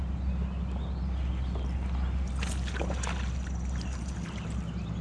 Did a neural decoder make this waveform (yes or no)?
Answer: no